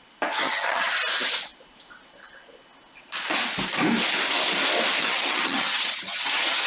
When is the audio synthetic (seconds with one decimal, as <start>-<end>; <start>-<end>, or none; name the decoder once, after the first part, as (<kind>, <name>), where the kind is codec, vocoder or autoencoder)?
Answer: 0.4-0.9 (vocoder, HiFi-GAN); 5.0-6.7